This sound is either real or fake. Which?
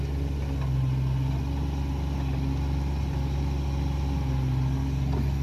real